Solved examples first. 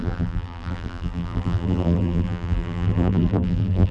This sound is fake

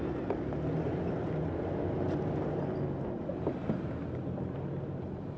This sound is real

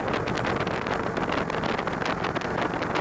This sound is real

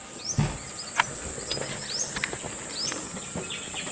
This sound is real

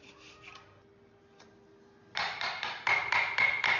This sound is real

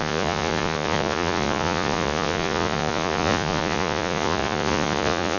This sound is fake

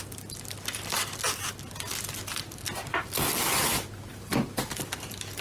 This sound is real